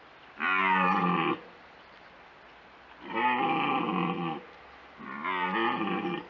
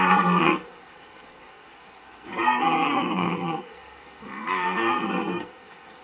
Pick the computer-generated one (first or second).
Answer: second